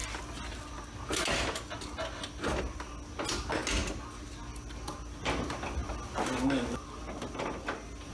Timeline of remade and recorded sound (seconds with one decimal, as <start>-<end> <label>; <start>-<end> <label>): 0.0-8.1 recorded